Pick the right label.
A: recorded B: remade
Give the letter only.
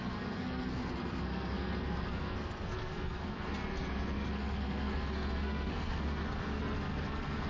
B